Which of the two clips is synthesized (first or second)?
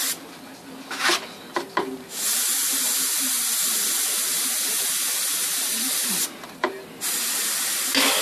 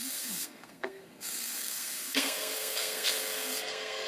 second